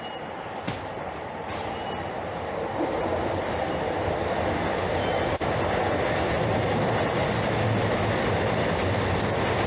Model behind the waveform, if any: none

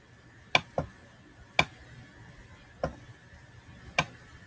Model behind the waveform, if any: none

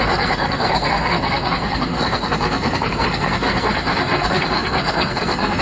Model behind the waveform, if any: codec, SNAC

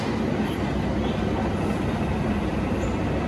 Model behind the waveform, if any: none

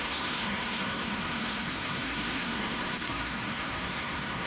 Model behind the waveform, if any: codec, SNAC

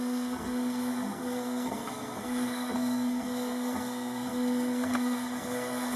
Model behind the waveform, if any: codec, SNAC